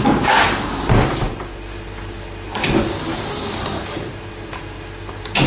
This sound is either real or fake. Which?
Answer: real